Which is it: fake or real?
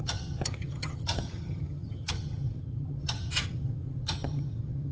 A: fake